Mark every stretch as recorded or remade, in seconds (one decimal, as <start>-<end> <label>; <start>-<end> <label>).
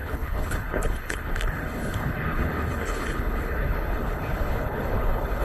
0.0-5.4 remade